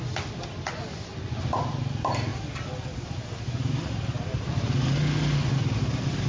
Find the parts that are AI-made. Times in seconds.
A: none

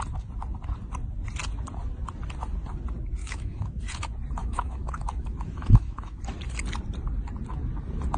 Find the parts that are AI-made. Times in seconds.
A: 3.2-3.8 (autoencoder, DAC-VAE); 4.4-6.2

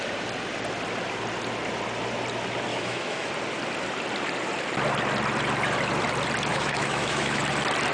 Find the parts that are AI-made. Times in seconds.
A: 2.7-3.3 (autoencoder, DAC-VAE); 6.5-7.4

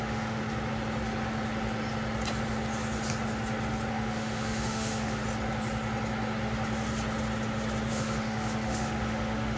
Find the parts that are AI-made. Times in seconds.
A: 0.0-0.4 (autoencoder, DAC-VAE); 3.9-5.2; 7.9-9.6